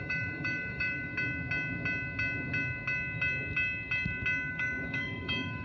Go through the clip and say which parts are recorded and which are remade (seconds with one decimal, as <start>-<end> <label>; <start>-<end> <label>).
0.0-1.1 remade; 1.1-4.5 recorded; 4.5-5.6 remade